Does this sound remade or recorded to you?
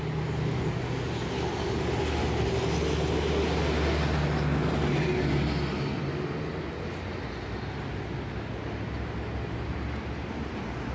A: recorded